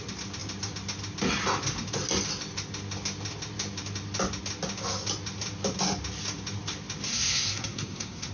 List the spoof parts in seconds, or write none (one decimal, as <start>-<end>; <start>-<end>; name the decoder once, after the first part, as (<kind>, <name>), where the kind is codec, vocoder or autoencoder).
7.1-8.3 (codec, SNAC)